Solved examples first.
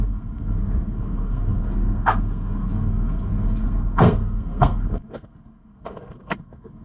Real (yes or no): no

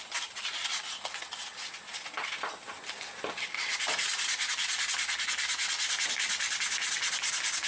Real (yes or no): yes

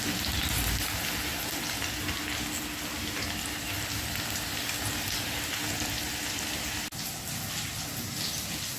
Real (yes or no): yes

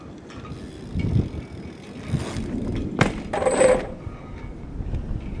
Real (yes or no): yes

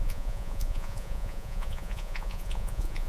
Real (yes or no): no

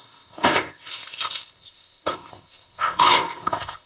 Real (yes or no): no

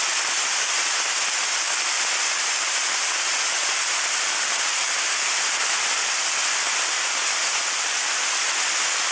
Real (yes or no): yes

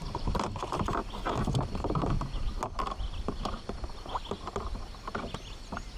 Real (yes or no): yes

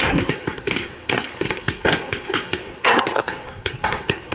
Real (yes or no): no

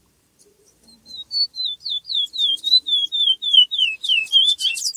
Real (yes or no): no